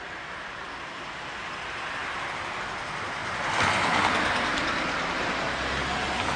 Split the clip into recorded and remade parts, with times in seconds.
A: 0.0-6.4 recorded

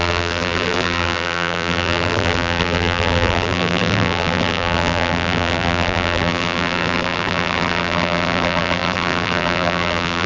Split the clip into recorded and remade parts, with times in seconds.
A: 0.0-10.3 remade

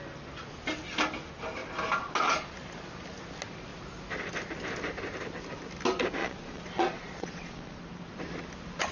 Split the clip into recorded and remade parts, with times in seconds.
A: 0.0-6.2 recorded; 6.2-7.8 remade; 7.8-8.9 recorded

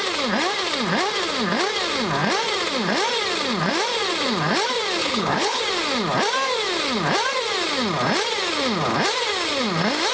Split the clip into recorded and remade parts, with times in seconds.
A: 0.0-5.0 recorded; 5.0-5.6 remade; 5.6-10.1 recorded